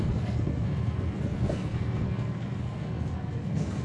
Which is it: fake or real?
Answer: fake